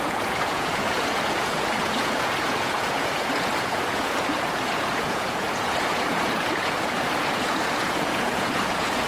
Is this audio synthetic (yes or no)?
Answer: yes